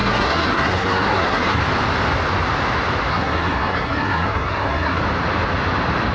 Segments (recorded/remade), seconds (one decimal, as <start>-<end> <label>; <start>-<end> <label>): 0.0-1.6 remade; 1.6-3.1 recorded; 3.1-5.0 remade; 5.0-6.1 recorded